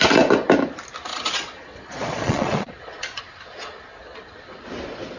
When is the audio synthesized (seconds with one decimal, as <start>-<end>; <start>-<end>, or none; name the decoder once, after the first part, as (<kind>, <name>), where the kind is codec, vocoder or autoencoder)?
1.1-3.2 (vocoder, Vocos)